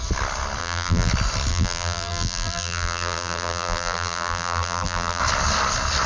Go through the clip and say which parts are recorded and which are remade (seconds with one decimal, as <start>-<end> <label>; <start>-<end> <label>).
0.0-0.6 recorded; 0.6-1.1 remade; 1.1-1.5 recorded; 1.5-5.2 remade; 5.2-6.1 recorded

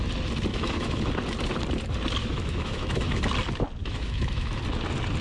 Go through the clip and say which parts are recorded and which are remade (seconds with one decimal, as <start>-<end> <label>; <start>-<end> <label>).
0.0-0.5 recorded; 0.5-1.1 remade; 1.1-2.2 recorded; 2.2-3.2 remade; 3.2-3.8 recorded; 3.8-4.6 remade; 4.6-5.2 recorded

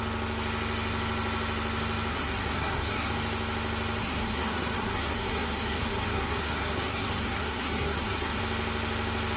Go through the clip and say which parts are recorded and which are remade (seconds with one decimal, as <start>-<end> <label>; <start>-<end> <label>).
0.0-2.1 recorded; 2.1-3.1 remade; 3.1-4.0 recorded; 4.0-8.4 remade; 8.4-9.4 recorded